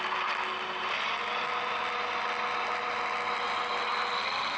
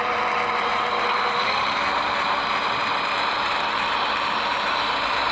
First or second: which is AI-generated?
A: second